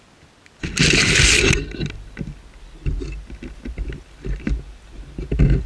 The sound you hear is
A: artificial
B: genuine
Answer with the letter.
B